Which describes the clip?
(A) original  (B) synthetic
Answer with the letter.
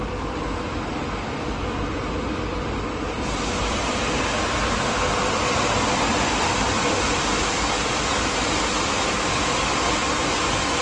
A